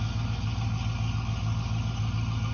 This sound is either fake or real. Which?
real